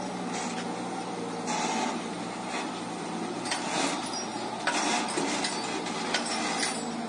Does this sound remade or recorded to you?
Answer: recorded